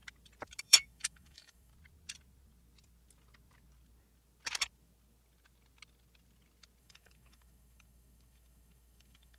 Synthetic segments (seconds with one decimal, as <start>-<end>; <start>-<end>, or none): 0.6-1.7; 6.8-9.4